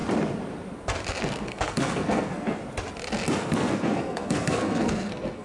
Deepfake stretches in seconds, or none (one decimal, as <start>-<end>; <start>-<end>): 1.2-2.6; 3.4-5.4